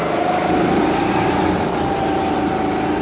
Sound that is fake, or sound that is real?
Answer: real